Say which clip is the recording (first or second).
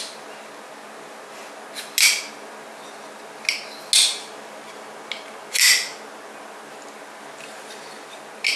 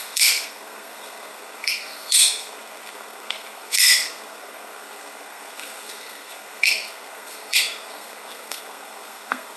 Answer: first